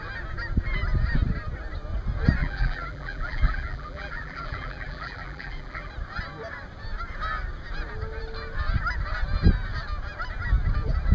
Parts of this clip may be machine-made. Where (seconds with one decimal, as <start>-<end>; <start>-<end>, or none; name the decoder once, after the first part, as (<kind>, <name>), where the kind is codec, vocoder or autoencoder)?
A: 2.4-5.9 (vocoder, BigVGAN v2)